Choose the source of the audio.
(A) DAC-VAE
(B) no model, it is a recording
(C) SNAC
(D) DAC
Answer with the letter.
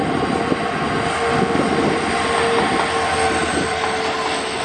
B